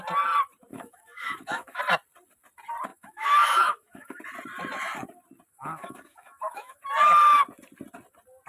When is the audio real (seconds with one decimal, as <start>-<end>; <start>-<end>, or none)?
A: 0.0-0.7; 1.8-2.9; 4.2-5.5; 6.8-8.5